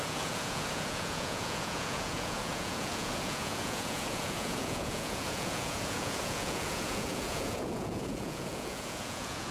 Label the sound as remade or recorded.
remade